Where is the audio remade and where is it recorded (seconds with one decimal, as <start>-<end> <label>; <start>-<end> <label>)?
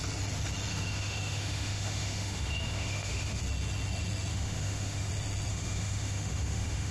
0.0-0.7 recorded; 0.7-3.4 remade; 3.4-4.3 recorded; 4.3-5.1 remade; 5.1-5.5 recorded; 5.5-6.9 remade